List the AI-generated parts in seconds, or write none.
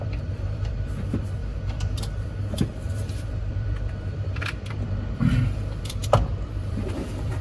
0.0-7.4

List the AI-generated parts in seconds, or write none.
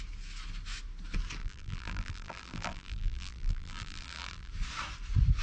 1.4-4.5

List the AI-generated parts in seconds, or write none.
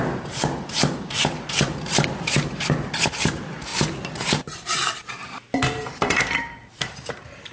0.0-3.7; 4.4-7.5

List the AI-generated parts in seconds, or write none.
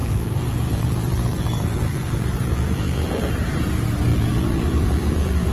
0.0-3.3; 4.1-5.5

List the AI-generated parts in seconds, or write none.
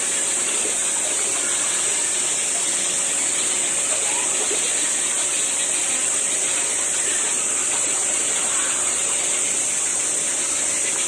5.8-9.5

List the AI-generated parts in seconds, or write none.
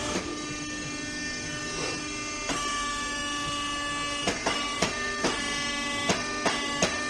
4.7-5.4